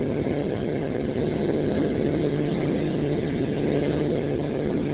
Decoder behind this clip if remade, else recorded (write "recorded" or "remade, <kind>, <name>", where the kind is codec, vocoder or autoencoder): remade, vocoder, HiFi-GAN